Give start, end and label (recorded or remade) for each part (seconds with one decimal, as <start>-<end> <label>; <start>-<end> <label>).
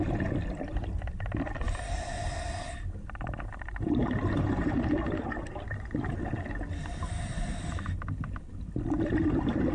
0.0-9.7 recorded